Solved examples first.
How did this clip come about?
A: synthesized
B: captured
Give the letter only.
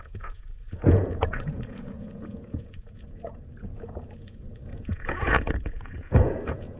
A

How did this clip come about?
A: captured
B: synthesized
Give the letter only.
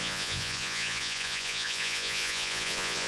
B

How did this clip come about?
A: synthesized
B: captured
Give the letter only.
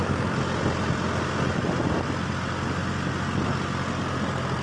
B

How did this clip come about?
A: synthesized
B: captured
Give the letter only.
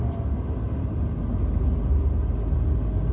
B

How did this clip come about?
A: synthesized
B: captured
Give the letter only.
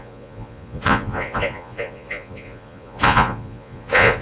A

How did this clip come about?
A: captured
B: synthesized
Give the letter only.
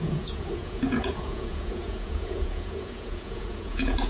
B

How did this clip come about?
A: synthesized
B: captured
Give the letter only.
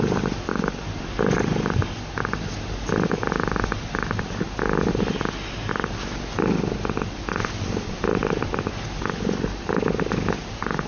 B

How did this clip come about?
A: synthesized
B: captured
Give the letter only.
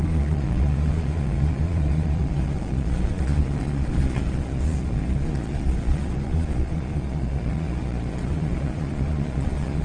A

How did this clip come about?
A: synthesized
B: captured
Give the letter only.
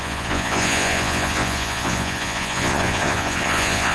A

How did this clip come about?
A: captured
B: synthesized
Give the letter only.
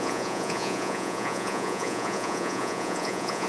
B